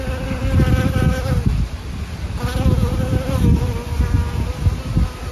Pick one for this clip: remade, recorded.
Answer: recorded